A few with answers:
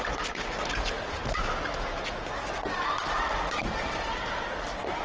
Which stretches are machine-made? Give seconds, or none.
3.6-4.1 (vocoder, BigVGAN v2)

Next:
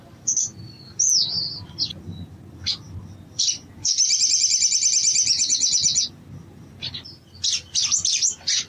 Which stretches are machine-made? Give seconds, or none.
none